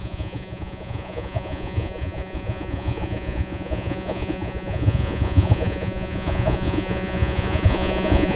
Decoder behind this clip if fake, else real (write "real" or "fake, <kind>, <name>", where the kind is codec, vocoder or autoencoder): fake, vocoder, Vocos